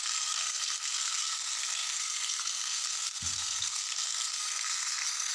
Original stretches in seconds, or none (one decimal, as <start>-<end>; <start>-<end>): none